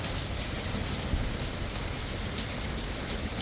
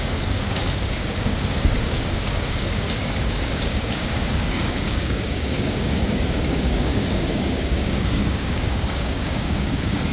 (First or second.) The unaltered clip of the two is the first